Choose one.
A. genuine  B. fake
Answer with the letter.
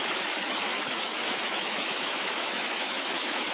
B